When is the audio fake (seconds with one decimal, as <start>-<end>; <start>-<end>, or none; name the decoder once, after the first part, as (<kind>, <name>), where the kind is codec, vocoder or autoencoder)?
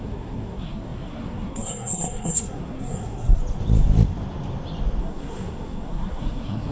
0.0-3.4 (codec, SNAC); 5.0-6.7